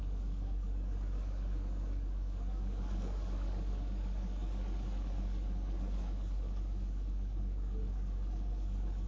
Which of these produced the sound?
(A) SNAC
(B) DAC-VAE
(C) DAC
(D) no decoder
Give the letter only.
C